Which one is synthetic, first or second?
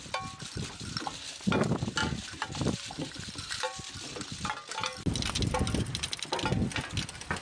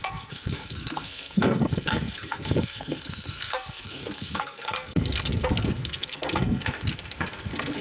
second